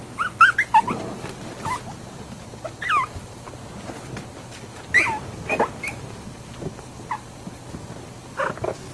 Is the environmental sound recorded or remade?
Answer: recorded